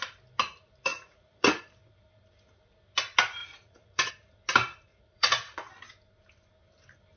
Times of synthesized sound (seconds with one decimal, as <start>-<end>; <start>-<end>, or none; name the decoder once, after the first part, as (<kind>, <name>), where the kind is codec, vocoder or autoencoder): 0.9-1.6 (vocoder, Vocos); 3.4-4.1; 4.9-5.7